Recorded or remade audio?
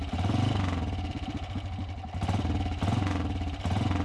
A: recorded